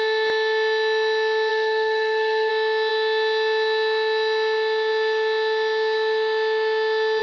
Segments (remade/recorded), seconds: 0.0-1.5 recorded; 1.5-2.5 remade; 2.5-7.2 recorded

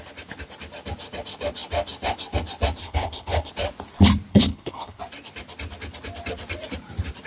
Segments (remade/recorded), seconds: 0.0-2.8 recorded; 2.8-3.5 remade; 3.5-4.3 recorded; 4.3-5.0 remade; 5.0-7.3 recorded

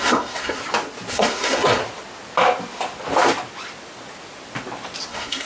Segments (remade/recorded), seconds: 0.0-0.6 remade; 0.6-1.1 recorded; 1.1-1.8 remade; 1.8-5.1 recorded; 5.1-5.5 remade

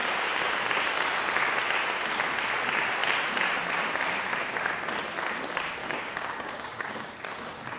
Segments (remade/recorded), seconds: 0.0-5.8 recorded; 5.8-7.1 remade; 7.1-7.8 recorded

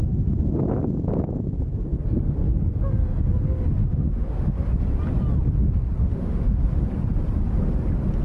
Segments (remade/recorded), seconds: 0.0-0.6 remade; 0.6-3.8 recorded; 3.8-4.7 remade; 4.7-6.0 recorded; 6.0-6.6 remade; 6.6-8.2 recorded

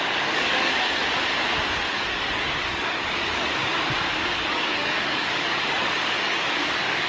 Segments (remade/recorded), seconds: 0.0-1.0 remade; 1.0-1.9 recorded; 1.9-3.6 remade; 3.6-4.3 recorded; 4.3-7.1 remade

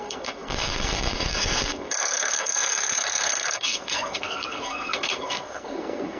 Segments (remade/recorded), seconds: 0.0-6.2 remade

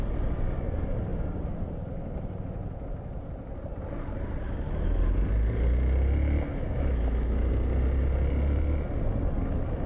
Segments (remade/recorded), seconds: 0.0-6.5 recorded; 6.5-7.5 remade; 7.5-9.9 recorded